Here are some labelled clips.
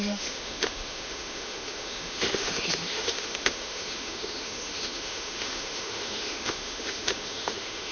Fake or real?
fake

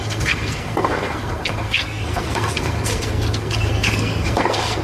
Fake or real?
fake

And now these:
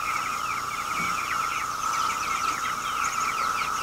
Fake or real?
real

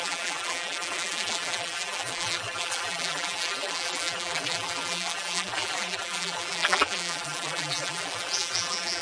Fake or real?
fake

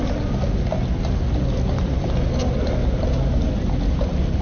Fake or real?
real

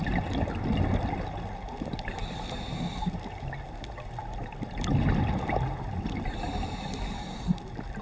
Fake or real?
real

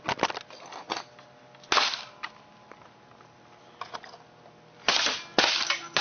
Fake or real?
real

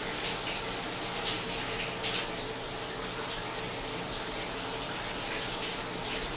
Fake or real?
real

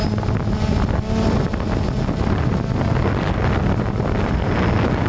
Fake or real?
real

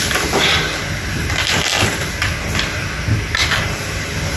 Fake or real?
real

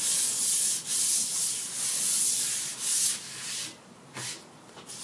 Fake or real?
real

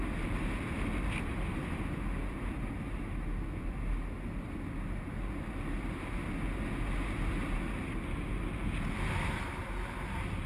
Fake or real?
real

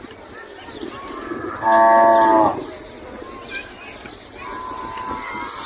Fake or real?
real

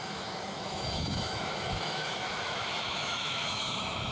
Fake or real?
fake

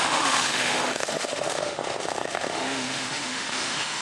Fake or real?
fake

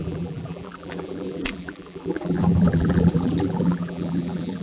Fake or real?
fake